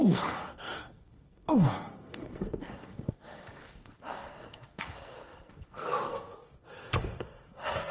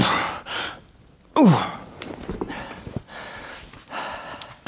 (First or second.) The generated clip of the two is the first